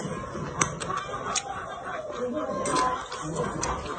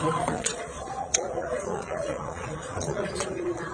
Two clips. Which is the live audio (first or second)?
first